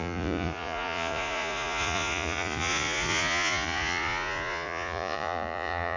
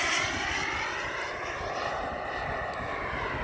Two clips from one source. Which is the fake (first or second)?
first